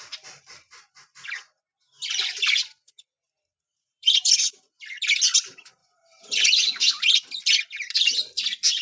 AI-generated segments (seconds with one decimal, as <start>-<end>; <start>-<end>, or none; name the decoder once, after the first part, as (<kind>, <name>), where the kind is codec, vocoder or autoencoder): 3.7-4.3 (vocoder, BigVGAN v2); 5.8-7.0